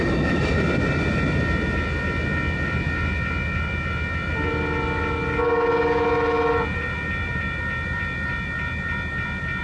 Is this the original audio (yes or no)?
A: yes